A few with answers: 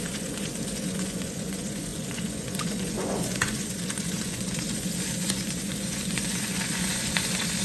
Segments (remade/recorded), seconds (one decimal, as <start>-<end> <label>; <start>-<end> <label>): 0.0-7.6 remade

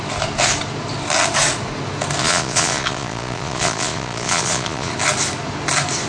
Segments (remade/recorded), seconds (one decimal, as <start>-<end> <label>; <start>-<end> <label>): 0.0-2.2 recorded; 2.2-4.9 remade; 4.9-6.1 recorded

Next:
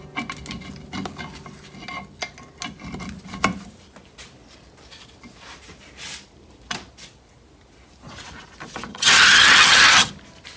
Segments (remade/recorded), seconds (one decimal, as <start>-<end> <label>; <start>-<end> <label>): 0.0-8.9 recorded; 8.9-10.1 remade; 10.1-10.6 recorded